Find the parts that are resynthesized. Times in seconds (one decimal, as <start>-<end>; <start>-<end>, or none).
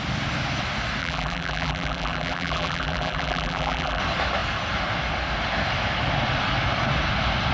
1.0-4.0